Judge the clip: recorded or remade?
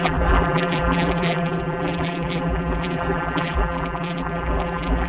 remade